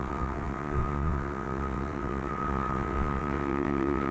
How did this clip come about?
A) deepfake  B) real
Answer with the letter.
A